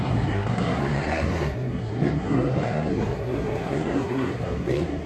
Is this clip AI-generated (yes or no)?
yes